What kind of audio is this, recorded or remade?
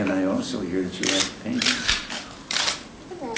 recorded